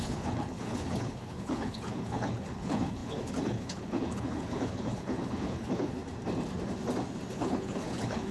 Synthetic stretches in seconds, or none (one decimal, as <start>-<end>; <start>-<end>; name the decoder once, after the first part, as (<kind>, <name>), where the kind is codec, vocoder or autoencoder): 0.0-6.0 (codec, HILCodec); 7.3-8.3

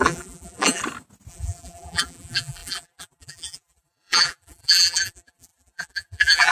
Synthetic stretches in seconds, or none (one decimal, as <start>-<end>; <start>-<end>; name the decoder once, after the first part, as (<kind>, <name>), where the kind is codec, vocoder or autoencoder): 0.0-0.8 (vocoder, BigVGAN v2); 1.3-6.5